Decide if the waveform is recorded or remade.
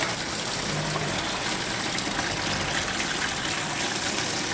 recorded